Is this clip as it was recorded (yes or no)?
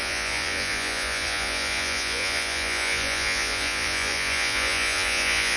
no